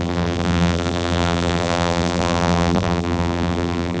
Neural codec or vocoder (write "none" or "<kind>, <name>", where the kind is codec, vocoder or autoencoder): vocoder, BigVGAN v2